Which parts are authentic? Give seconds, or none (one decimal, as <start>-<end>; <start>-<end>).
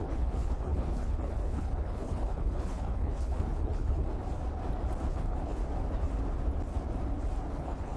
4.1-5.1; 5.6-7.5